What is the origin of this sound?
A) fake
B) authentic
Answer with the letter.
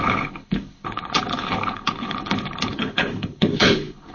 A